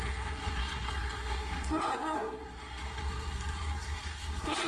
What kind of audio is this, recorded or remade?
remade